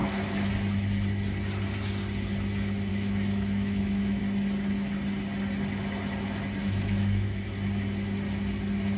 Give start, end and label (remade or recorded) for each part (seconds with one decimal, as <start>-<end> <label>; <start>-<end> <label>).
0.0-0.5 remade; 0.5-2.9 recorded; 2.9-4.2 remade; 4.2-6.6 recorded; 6.6-7.5 remade; 7.5-9.0 recorded